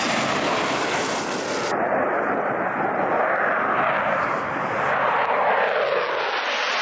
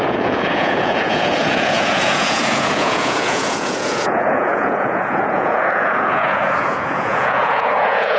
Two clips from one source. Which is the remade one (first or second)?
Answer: second